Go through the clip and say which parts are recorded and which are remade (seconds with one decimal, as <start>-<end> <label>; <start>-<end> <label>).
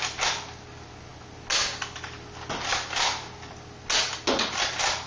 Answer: 0.0-5.1 recorded